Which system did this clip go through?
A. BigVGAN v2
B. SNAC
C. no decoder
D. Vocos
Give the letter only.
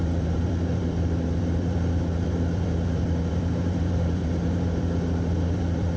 A